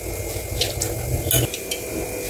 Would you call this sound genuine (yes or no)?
yes